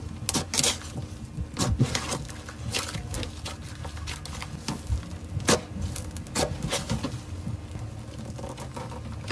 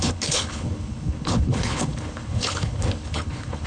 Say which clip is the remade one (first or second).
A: second